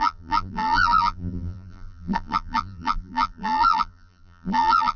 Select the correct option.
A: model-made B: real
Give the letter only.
A